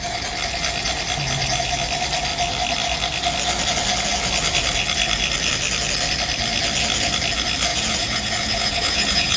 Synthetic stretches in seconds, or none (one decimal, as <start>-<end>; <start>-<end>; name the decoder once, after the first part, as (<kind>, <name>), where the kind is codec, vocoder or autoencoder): 7.7-9.4 (vocoder, Vocos)